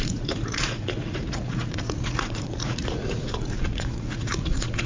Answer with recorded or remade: remade